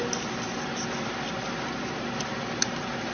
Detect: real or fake real